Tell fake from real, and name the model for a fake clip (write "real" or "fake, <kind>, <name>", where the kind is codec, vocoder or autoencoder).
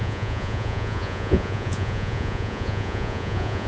fake, vocoder, Vocos